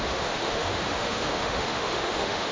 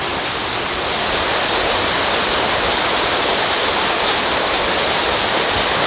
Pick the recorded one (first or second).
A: second